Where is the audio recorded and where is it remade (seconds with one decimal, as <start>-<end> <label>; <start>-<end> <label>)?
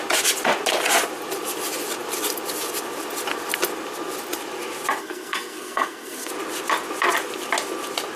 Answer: 0.0-5.0 recorded; 5.0-6.3 remade; 6.3-8.2 recorded